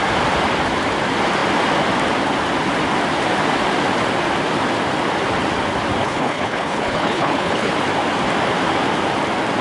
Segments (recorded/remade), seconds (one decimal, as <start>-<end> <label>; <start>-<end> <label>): 0.0-6.0 recorded; 6.0-7.7 remade; 7.7-9.6 recorded